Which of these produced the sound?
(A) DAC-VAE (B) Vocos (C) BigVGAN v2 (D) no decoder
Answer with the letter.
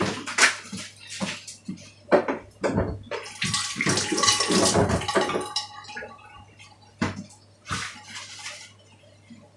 D